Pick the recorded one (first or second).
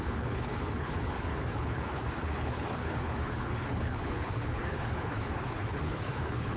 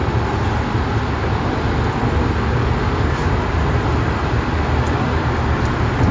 second